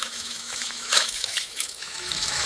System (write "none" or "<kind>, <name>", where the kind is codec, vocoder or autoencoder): autoencoder, DAC-VAE